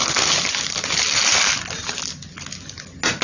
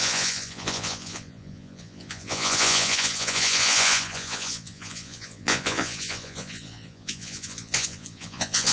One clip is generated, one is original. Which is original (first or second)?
first